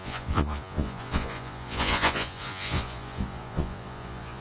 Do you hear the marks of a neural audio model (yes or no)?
yes